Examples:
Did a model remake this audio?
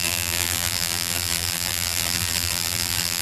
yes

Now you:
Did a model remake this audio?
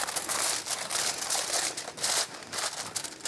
no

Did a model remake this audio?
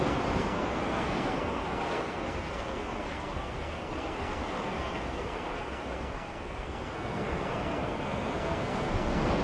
yes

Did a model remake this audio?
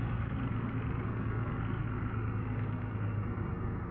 yes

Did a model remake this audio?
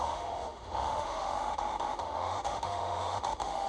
yes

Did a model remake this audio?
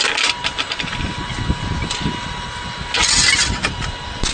no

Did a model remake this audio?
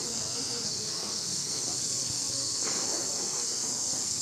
yes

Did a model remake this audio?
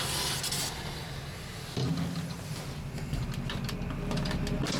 no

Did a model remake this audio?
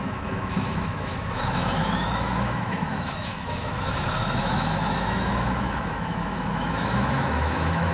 yes